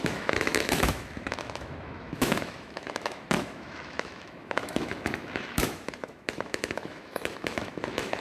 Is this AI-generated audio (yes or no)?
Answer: yes